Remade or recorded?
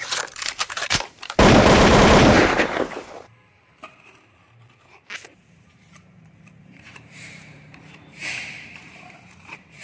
remade